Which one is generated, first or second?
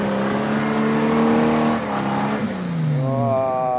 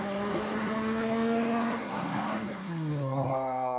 second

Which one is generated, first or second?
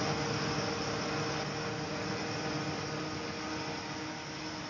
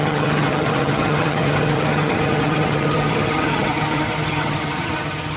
second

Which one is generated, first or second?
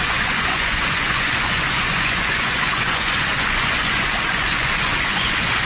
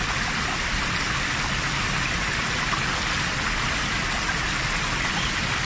first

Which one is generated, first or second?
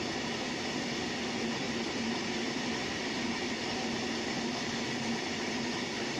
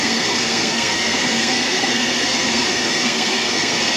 second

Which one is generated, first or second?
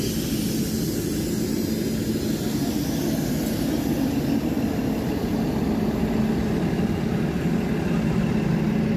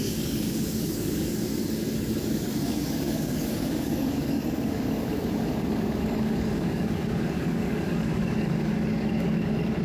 second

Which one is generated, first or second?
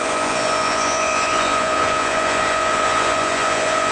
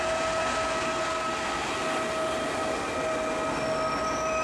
first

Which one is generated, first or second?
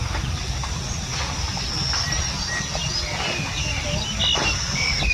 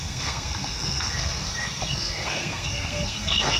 second